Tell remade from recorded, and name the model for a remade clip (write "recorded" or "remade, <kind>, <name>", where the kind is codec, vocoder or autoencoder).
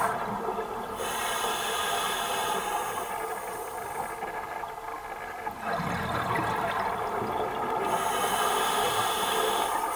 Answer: recorded